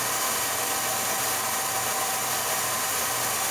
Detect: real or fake real